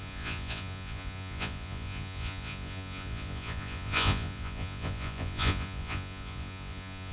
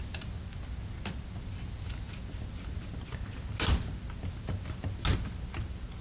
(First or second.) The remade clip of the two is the first